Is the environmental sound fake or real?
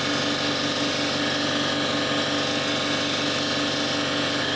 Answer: real